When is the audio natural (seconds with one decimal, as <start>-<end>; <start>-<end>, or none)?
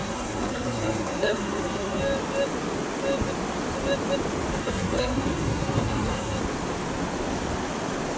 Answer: 2.0-4.6; 6.4-8.2